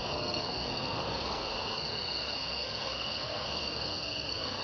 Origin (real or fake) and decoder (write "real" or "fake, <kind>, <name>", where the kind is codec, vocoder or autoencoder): fake, codec, SNAC